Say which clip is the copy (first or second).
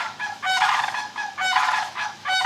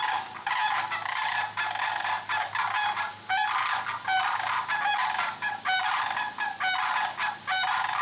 first